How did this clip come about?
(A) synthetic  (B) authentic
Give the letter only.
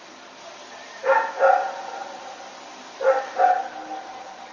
B